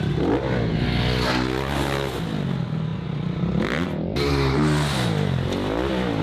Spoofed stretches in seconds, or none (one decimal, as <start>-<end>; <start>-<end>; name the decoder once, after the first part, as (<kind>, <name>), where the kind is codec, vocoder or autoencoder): none